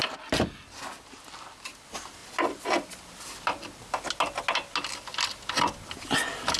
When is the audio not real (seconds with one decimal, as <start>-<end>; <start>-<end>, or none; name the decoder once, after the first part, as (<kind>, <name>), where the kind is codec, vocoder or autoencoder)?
none